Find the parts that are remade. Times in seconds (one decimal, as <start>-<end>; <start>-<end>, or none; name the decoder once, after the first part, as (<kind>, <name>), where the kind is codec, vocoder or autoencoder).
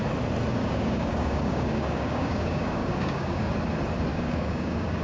0.5-3.5 (codec, DAC); 4.1-5.0